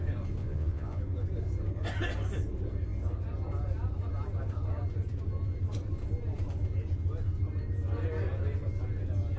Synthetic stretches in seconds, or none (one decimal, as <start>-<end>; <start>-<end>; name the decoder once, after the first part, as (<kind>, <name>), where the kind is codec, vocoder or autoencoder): 0.4-1.0 (vocoder, Vocos)